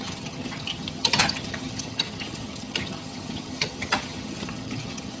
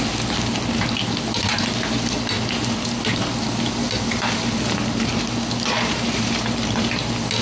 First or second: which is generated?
first